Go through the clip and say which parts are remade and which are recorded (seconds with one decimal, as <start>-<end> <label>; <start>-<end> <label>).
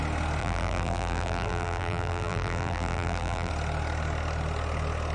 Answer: 0.0-0.4 recorded; 0.4-3.5 remade; 3.5-5.1 recorded